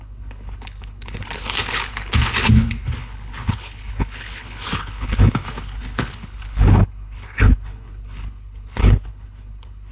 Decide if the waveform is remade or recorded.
remade